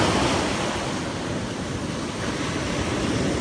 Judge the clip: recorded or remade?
recorded